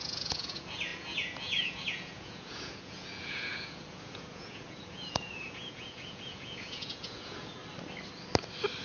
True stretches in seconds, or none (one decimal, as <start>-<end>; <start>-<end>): 7.6-8.8